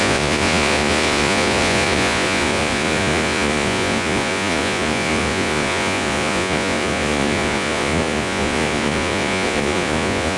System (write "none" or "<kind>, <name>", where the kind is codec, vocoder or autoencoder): vocoder, Vocos